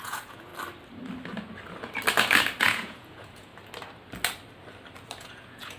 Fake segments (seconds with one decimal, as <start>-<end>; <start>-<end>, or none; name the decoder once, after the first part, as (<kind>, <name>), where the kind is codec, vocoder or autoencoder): 0.0-0.5 (vocoder, Vocos); 2.6-3.5; 5.2-5.8